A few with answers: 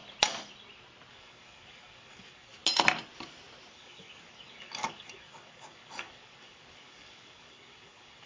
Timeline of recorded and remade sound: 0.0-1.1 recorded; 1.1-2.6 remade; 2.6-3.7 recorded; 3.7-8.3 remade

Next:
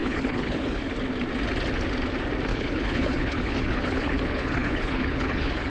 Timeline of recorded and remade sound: 0.0-0.9 remade; 0.9-2.5 recorded; 2.5-5.7 remade